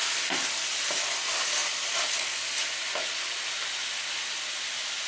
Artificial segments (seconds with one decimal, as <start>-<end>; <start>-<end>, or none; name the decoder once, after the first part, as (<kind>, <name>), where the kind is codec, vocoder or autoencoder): none